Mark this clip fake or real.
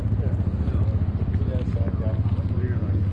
real